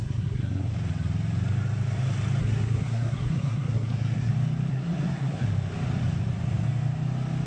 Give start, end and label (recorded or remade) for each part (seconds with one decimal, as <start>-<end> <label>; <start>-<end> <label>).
0.0-0.7 remade; 0.7-2.4 recorded; 2.4-4.3 remade; 4.3-4.7 recorded; 4.7-5.5 remade; 5.5-7.5 recorded